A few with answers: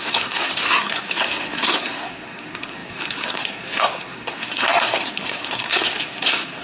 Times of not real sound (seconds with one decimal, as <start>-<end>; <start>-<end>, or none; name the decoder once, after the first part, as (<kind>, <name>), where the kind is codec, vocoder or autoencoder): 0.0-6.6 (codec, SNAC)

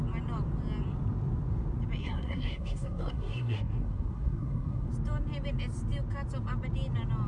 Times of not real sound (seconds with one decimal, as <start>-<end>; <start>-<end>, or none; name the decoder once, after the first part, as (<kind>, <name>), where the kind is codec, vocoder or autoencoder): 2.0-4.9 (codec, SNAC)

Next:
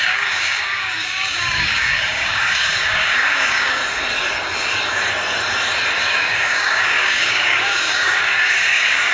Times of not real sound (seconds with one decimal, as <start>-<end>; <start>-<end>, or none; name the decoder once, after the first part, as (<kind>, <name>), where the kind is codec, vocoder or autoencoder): 0.0-3.8 (codec, DAC); 6.0-9.1

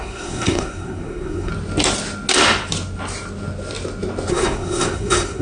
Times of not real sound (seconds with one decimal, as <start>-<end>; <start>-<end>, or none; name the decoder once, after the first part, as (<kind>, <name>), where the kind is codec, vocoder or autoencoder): 0.0-1.5 (codec, SNAC); 4.3-5.4

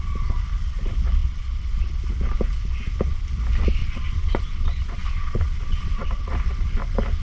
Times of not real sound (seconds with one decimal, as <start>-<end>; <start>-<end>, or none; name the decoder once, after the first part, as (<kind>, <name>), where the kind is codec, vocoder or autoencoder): 3.8-5.9 (vocoder, Vocos)

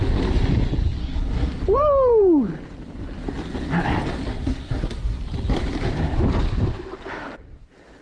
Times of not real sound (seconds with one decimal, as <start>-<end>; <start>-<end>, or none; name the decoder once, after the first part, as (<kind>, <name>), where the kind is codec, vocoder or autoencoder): 1.0-1.6 (codec, SNAC); 4.3-5.2

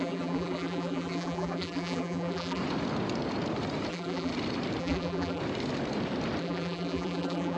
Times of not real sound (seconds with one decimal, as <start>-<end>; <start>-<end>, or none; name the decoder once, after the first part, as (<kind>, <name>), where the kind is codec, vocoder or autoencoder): 0.0-2.6 (vocoder, BigVGAN v2); 3.9-4.3; 4.8-5.4; 6.4-7.6

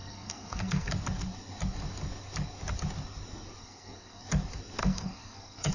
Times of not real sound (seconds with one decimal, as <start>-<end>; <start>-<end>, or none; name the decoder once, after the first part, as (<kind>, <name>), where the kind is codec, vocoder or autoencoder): 0.0-0.9 (codec, SNAC); 3.6-4.2; 4.8-5.7